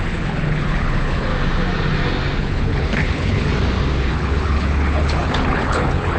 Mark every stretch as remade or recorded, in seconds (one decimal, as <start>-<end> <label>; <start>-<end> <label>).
0.0-1.3 remade; 1.3-2.4 recorded; 2.4-3.5 remade; 3.5-4.1 recorded; 4.1-6.2 remade